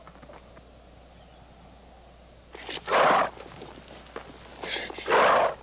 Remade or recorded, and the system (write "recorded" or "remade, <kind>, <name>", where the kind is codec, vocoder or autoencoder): recorded